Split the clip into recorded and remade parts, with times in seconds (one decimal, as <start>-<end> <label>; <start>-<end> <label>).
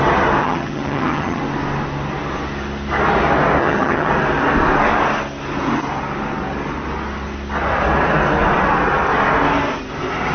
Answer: 0.0-0.4 recorded; 0.4-1.4 remade; 1.4-3.6 recorded; 3.6-4.1 remade; 4.1-10.3 recorded